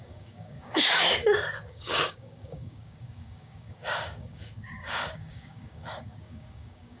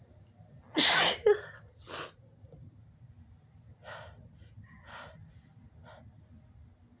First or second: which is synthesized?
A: first